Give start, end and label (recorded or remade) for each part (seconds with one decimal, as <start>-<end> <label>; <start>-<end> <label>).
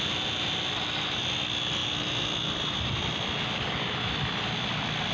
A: 0.0-5.1 recorded